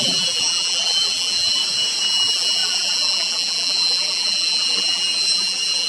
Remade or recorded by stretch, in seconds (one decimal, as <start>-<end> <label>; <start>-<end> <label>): 0.0-1.6 remade; 1.6-2.1 recorded; 2.1-5.9 remade